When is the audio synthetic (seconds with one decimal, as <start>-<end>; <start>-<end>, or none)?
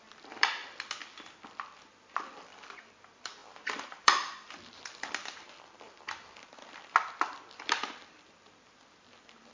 0.0-0.6; 2.2-9.5